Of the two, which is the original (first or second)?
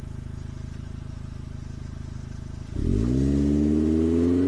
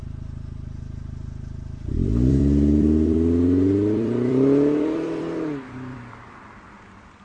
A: first